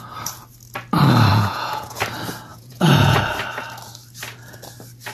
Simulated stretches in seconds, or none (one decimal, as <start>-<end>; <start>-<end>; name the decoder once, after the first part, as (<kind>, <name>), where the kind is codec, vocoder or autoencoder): 1.3-2.0 (vocoder, Vocos); 2.5-3.2